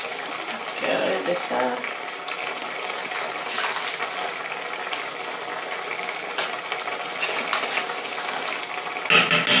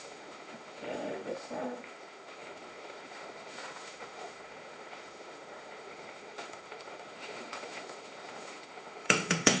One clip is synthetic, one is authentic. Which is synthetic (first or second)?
second